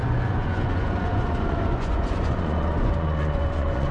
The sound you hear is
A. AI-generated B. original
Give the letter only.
A